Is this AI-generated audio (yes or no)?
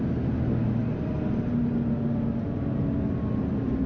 no